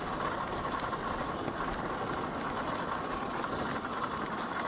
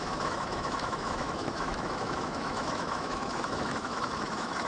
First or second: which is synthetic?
second